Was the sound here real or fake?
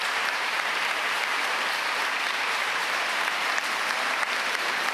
fake